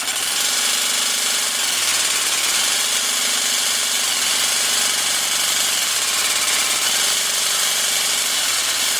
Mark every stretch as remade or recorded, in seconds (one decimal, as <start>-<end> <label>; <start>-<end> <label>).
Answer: 0.0-9.0 recorded